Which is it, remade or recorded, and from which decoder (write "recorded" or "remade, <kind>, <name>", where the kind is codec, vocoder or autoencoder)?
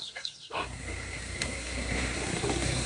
remade, codec, SNAC